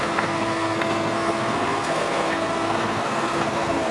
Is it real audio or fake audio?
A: fake